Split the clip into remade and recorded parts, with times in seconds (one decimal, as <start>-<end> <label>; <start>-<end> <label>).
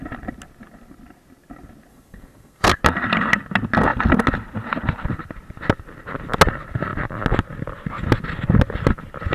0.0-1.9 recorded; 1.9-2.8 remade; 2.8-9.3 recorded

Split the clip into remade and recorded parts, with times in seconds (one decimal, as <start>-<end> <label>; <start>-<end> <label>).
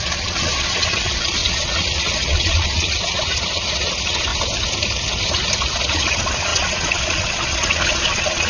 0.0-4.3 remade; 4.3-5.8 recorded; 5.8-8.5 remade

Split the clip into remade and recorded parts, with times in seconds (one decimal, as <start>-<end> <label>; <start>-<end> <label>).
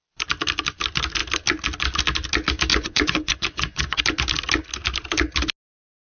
0.0-2.7 recorded; 2.7-4.0 remade; 4.0-6.1 recorded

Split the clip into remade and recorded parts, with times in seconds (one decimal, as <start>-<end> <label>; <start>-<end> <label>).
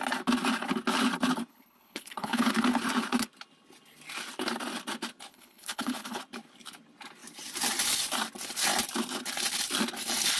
0.0-1.5 recorded; 1.5-2.5 remade; 2.5-5.3 recorded; 5.3-6.2 remade; 6.2-10.4 recorded